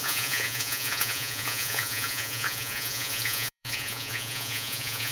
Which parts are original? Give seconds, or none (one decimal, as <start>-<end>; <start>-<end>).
none